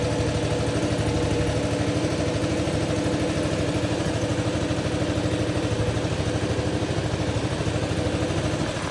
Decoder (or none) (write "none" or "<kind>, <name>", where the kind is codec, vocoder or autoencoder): none